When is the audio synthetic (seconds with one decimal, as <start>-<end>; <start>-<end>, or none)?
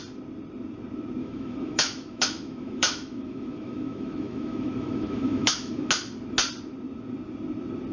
1.2-5.9